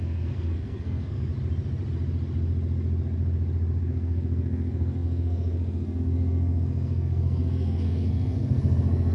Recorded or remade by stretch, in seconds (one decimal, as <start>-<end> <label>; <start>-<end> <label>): 0.0-1.3 remade; 1.3-3.8 recorded; 3.8-9.1 remade